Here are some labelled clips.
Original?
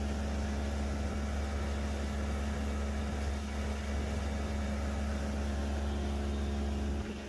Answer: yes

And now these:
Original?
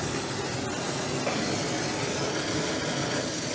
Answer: yes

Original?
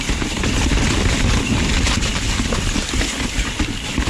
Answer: no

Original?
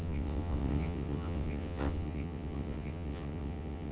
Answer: no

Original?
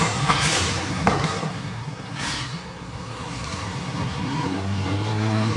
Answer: no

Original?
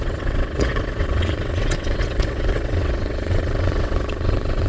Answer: no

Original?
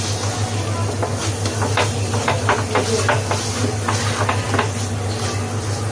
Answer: yes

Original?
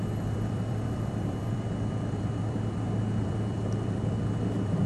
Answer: no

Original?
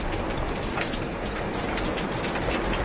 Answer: yes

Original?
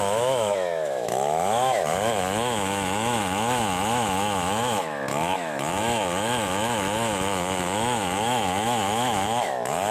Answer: no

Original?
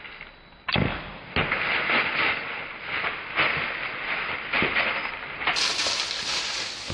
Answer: yes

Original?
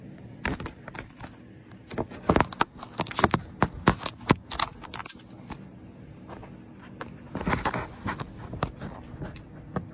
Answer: yes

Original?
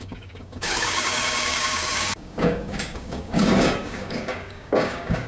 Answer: no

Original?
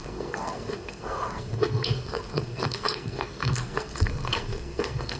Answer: no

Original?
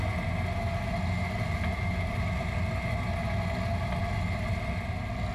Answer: yes